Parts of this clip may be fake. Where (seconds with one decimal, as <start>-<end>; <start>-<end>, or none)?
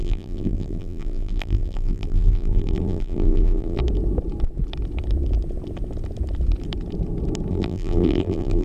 0.0-3.8; 7.5-8.6